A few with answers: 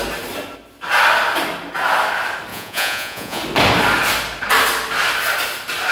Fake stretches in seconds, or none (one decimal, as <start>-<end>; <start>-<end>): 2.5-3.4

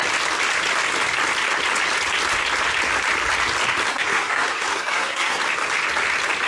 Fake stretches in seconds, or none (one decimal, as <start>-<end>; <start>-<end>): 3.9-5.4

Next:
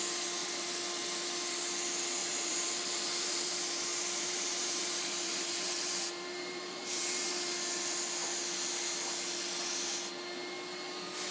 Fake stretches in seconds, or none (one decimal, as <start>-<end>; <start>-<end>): 0.4-1.2; 2.2-7.3

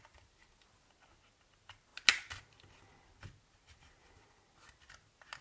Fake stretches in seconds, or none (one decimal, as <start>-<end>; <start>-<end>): none

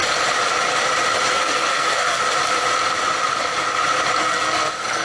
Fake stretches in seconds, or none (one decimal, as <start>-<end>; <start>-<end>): 1.3-2.2; 4.2-5.0